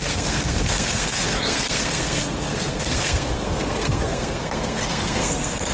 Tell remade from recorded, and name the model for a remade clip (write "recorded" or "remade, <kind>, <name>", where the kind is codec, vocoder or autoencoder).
remade, codec, SNAC